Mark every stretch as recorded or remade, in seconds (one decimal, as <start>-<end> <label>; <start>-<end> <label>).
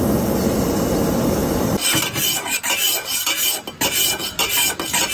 0.0-5.1 recorded